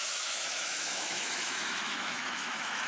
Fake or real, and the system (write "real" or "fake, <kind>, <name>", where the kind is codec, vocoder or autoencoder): fake, autoencoder, DAC-VAE